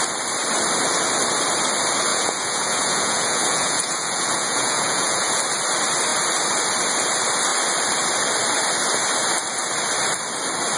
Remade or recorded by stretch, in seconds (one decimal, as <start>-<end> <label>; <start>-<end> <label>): 0.0-2.1 recorded; 2.1-5.4 remade; 5.4-10.8 recorded